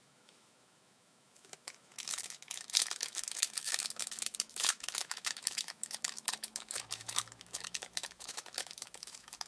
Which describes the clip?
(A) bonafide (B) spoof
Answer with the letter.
B